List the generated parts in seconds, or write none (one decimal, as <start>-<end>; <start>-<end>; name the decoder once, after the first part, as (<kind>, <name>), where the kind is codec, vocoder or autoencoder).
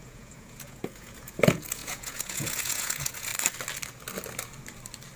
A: 0.0-3.3 (vocoder, Vocos)